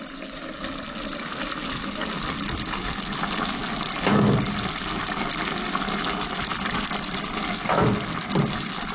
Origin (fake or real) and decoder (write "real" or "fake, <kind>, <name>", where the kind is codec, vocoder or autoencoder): real